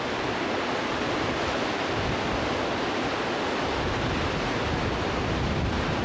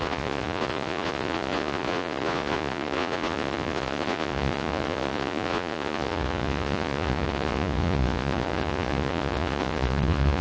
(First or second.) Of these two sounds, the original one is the first